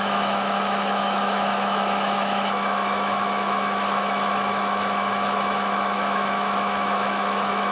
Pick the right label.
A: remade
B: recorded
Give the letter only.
A